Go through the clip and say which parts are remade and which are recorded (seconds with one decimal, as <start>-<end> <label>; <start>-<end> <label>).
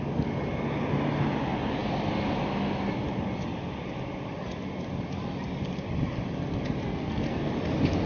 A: 0.0-6.9 recorded; 6.9-7.5 remade; 7.5-8.1 recorded